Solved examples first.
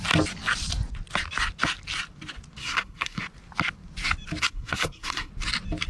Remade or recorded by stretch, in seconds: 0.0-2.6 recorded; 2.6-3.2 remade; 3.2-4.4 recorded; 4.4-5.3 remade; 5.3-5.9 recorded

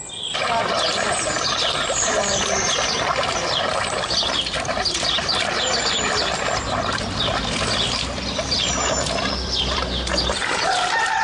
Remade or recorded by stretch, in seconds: 0.0-11.2 remade

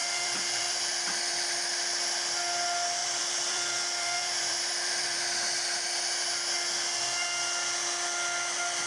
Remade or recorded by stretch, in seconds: 0.0-1.3 remade; 1.3-3.0 recorded; 3.0-5.2 remade; 5.2-8.9 recorded

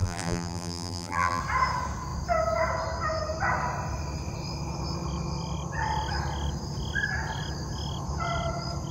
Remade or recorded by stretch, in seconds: 0.0-1.4 remade; 1.4-8.9 recorded

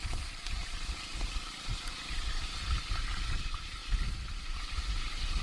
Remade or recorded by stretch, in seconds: 0.0-3.8 remade; 3.8-4.4 recorded; 4.4-5.4 remade